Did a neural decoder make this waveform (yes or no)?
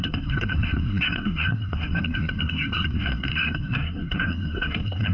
yes